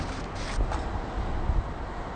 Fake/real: real